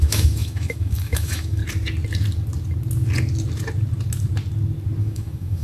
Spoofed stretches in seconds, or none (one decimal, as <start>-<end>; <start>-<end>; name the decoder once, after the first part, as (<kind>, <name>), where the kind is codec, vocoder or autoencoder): 0.0-1.6 (autoencoder, DAC-VAE); 5.0-5.6